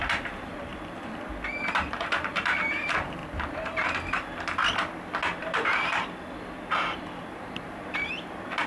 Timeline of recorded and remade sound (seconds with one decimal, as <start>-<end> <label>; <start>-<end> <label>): 0.0-0.7 remade; 0.7-1.8 recorded; 1.8-3.2 remade; 3.2-7.3 recorded; 7.3-8.7 remade